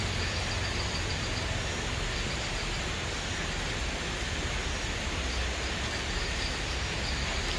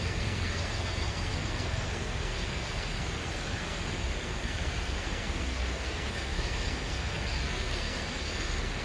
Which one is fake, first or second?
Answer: second